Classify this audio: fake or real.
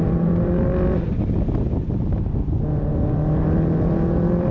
real